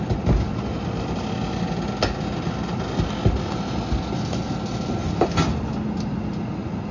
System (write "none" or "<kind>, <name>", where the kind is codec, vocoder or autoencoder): none